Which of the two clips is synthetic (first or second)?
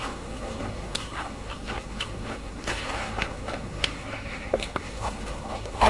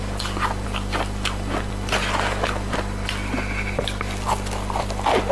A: first